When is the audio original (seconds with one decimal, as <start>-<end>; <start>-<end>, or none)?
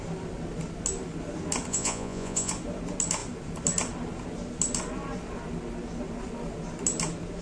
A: 0.0-1.7; 2.5-7.4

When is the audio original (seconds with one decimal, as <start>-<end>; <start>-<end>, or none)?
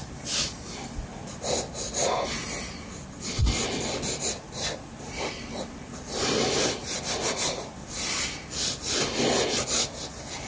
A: 0.0-10.5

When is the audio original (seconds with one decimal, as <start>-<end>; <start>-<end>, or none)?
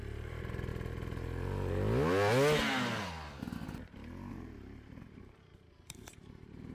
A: 0.7-4.3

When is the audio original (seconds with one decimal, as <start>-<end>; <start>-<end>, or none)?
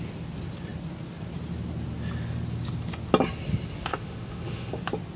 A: 0.0-3.9; 4.8-5.2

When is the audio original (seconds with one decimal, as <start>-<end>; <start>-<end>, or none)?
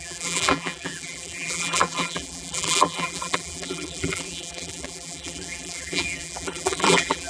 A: none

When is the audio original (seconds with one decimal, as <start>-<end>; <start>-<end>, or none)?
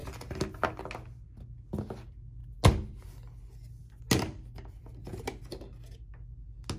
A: 0.0-6.8